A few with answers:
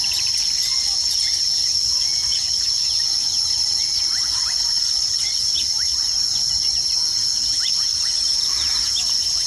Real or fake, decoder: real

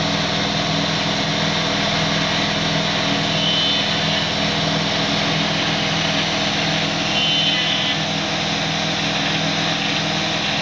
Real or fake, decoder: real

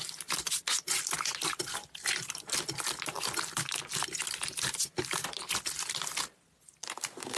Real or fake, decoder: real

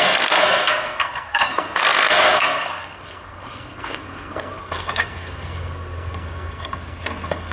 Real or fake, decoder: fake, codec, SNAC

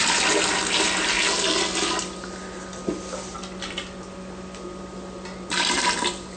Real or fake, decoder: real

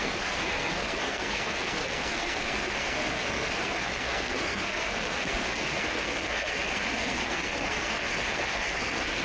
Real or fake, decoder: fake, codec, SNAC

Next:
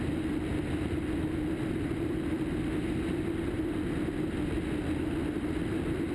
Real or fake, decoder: real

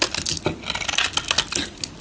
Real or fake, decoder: real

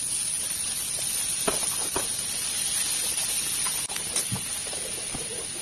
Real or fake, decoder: real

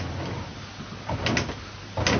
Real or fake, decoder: real